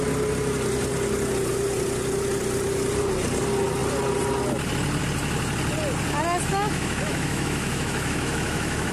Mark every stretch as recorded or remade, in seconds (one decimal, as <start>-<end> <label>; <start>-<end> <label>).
0.0-6.5 recorded; 6.5-8.9 remade